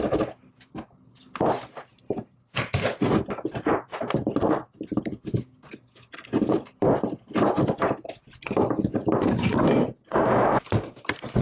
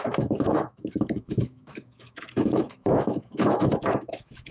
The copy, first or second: second